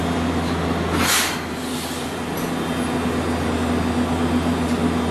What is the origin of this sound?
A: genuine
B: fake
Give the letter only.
A